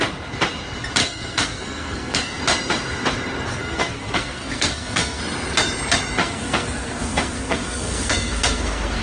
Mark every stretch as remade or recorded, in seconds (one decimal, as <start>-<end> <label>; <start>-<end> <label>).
0.0-1.0 recorded; 1.0-2.4 remade; 2.4-3.5 recorded; 3.5-5.2 remade; 5.2-6.2 recorded; 6.2-9.0 remade